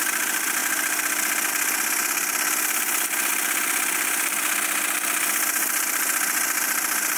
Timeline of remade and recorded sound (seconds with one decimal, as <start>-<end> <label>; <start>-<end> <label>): 0.0-7.2 recorded